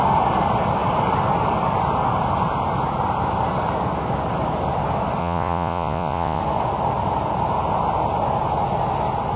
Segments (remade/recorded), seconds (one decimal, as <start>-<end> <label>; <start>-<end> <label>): 0.0-5.2 recorded; 5.2-6.4 remade; 6.4-9.4 recorded